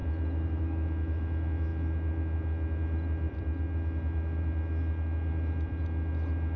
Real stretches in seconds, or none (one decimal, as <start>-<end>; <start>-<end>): none